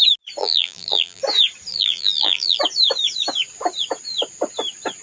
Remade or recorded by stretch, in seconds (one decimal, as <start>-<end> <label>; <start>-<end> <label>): 0.0-0.4 recorded; 0.4-1.2 remade; 1.2-1.7 recorded; 1.7-2.6 remade; 2.6-5.0 recorded